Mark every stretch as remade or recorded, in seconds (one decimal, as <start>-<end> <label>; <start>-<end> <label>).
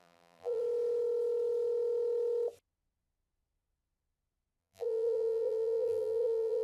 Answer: 0.0-0.6 remade; 0.6-4.6 recorded; 4.6-6.6 remade